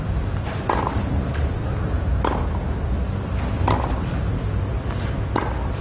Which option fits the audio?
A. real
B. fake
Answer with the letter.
A